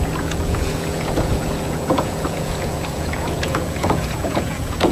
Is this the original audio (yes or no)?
no